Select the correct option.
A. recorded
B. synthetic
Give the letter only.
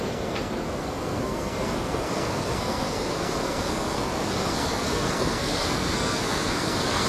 B